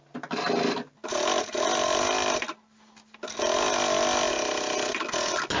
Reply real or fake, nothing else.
real